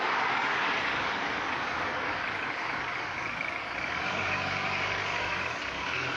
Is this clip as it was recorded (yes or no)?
no